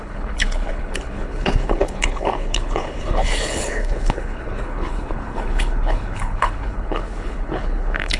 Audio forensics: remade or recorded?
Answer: remade